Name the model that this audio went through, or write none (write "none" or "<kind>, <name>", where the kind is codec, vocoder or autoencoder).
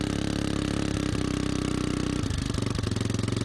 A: none